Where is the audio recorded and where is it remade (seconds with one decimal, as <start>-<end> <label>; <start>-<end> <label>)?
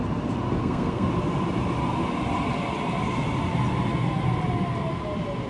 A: 0.0-0.6 recorded; 0.6-1.1 remade; 1.1-5.5 recorded